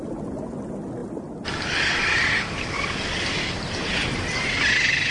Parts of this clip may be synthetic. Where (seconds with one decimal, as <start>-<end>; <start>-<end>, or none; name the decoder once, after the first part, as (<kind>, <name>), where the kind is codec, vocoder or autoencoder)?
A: none